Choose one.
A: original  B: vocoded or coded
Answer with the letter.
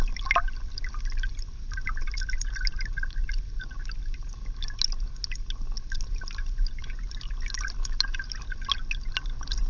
A